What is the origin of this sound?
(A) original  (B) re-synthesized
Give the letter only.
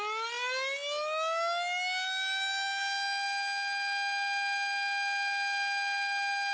A